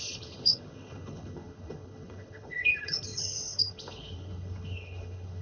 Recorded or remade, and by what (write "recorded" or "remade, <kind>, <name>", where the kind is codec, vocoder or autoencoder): remade, codec, HILCodec